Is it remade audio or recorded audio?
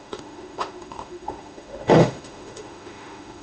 remade